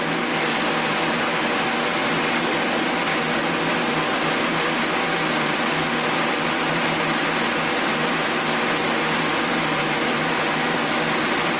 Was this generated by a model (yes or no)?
yes